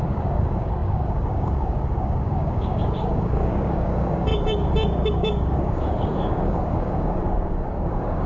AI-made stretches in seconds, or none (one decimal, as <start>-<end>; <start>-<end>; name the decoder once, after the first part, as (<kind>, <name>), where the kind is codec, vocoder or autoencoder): 0.0-8.3 (codec, DAC)